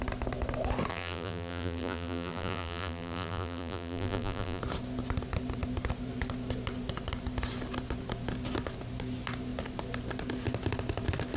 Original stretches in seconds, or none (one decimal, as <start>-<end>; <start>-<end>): 0.0-0.9; 4.6-11.4

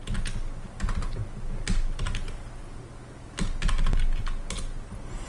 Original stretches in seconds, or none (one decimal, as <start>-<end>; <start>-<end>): 0.0-5.3

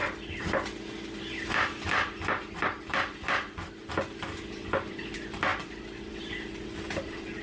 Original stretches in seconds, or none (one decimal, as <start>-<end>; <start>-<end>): 3.9-5.5; 6.1-7.4

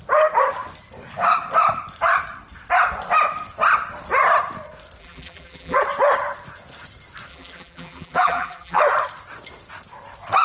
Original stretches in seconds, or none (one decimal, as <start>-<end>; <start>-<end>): 0.0-5.0; 5.8-7.3; 8.8-10.4

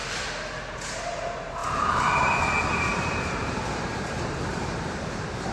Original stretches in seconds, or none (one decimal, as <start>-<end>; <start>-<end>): 0.0-0.7

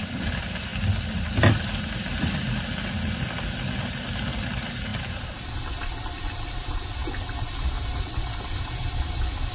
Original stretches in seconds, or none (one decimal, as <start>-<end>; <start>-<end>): 0.7-3.8; 7.0-7.9

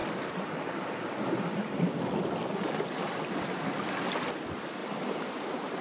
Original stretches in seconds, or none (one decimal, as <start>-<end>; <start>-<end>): 3.1-4.8